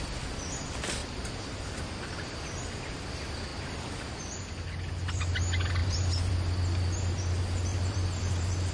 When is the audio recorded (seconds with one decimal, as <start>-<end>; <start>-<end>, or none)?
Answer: 0.0-1.0; 1.8-5.8; 6.3-7.7

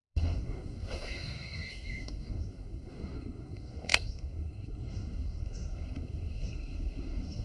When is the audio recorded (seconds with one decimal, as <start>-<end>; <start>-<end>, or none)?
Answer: none

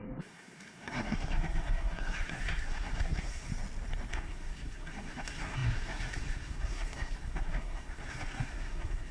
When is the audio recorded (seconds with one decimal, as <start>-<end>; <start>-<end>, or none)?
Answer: 3.5-4.1

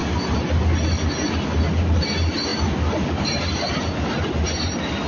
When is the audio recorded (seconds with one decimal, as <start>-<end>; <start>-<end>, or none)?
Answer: 0.0-5.1

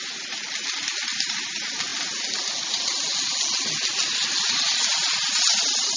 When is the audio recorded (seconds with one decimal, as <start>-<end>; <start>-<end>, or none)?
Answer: 0.0-6.0

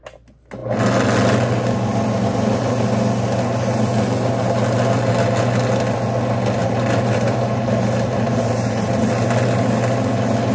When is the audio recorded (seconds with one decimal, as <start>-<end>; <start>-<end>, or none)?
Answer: 0.0-6.6; 8.9-10.5